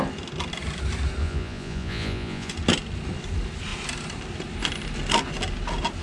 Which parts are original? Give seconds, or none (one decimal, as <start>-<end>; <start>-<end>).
0.0-1.2; 2.5-6.0